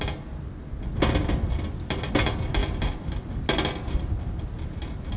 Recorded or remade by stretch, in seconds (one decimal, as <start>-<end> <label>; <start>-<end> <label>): 0.0-5.2 recorded